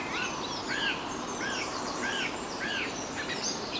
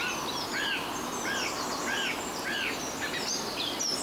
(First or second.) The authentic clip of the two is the second